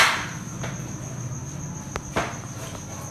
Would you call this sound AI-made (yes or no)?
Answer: no